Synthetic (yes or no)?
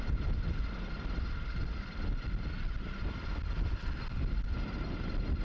no